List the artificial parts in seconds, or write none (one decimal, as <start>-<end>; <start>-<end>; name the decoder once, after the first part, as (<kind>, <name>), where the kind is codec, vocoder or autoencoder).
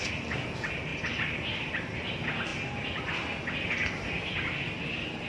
none